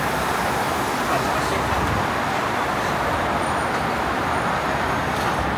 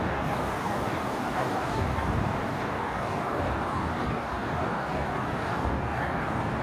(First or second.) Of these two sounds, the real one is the first